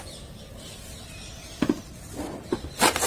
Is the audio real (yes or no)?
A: yes